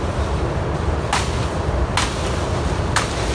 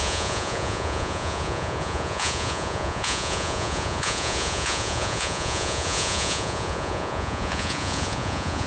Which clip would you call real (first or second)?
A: first